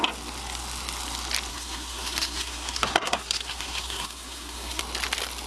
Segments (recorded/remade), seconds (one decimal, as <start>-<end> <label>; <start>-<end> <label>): 0.0-1.5 recorded; 1.5-4.8 remade; 4.8-5.5 recorded